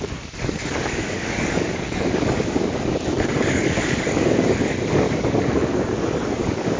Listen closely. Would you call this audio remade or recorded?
remade